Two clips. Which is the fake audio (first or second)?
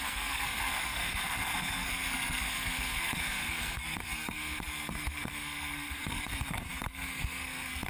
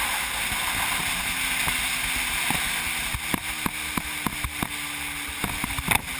first